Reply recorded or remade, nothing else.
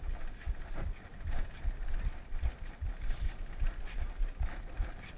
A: recorded